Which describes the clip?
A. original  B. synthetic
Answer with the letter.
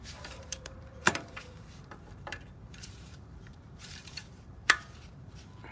B